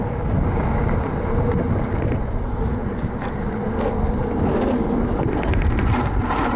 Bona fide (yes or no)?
yes